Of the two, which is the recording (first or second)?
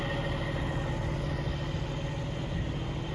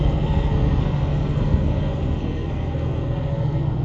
first